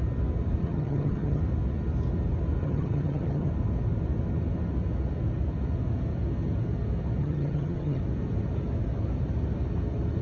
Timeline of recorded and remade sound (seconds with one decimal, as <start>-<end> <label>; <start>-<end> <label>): 0.0-0.6 recorded; 0.6-1.4 remade; 1.4-2.6 recorded; 2.6-3.5 remade; 3.5-7.2 recorded; 7.2-8.0 remade; 8.0-10.2 recorded